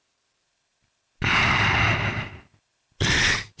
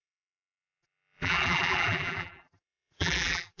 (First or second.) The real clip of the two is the first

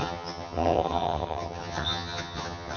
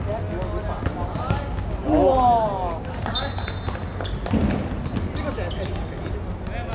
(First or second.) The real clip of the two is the second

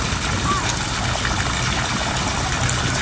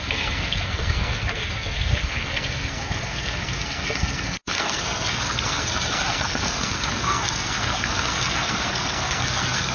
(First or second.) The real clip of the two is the first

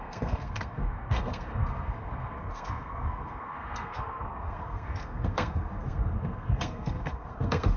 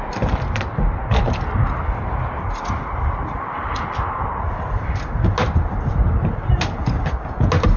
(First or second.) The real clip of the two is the second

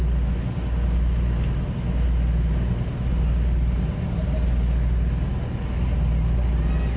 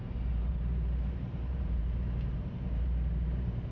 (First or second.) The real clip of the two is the first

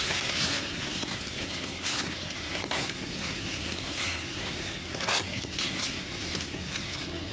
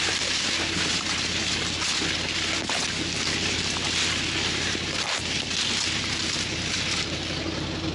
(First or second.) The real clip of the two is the second